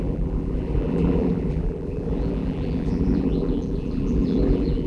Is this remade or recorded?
remade